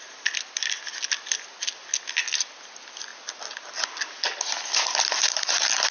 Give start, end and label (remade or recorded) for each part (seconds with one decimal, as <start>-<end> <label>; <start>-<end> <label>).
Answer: 0.0-5.9 recorded